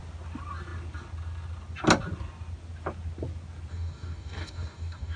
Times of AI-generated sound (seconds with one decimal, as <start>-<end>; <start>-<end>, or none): 3.7-5.2